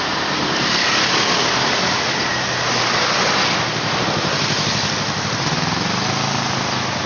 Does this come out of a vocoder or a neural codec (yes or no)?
no